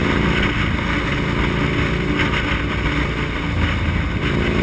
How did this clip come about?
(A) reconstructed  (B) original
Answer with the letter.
B